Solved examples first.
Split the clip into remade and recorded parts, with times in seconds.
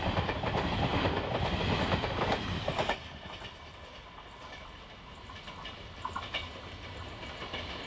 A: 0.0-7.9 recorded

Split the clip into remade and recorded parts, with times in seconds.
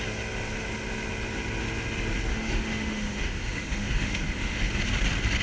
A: 0.0-2.3 recorded; 2.3-4.6 remade; 4.6-5.4 recorded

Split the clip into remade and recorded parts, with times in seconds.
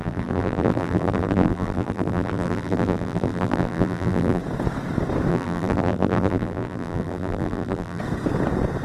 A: 0.0-4.4 remade; 4.4-5.3 recorded; 5.3-8.0 remade; 8.0-8.8 recorded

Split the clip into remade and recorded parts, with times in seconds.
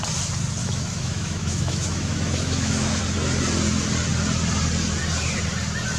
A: 0.0-0.6 recorded; 0.6-3.0 remade; 3.0-6.0 recorded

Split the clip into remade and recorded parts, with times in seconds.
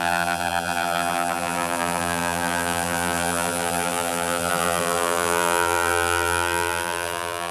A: 0.0-7.5 remade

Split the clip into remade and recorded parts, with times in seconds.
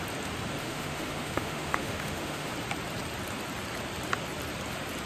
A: 0.0-0.6 recorded; 0.6-2.5 remade; 2.5-5.1 recorded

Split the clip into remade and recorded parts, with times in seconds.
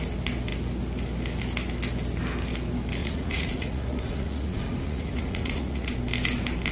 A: 0.0-3.0 recorded; 3.0-5.9 remade; 5.9-6.7 recorded